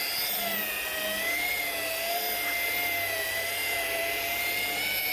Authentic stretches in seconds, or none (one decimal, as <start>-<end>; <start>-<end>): 0.0-5.1